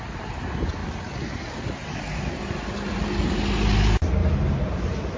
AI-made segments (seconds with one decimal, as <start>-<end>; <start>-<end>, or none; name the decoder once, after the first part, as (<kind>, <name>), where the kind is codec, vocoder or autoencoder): none